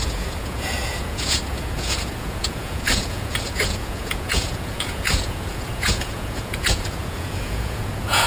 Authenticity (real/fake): fake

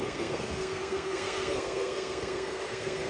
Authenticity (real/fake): fake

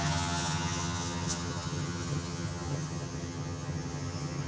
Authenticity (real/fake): fake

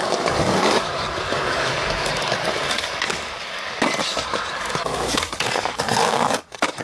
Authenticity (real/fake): fake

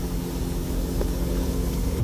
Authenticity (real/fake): fake